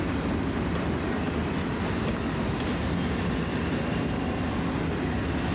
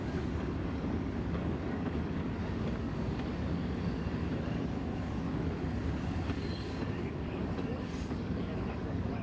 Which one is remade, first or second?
second